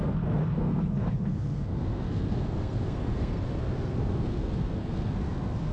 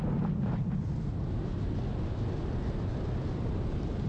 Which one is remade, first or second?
first